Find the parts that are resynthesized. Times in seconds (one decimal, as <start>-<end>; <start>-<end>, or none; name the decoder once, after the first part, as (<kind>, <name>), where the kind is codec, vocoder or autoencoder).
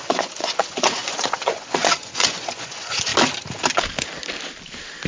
0.0-3.1 (vocoder, Vocos)